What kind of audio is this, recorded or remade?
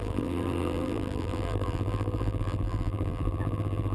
remade